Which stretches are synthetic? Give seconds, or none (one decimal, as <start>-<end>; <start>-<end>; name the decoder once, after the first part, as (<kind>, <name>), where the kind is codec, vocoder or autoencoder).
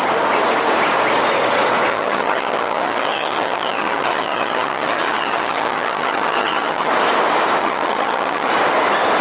1.9-6.9 (vocoder, HiFi-GAN); 7.6-8.5